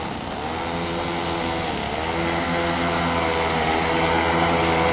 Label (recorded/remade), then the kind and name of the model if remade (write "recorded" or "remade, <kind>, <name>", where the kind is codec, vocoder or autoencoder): recorded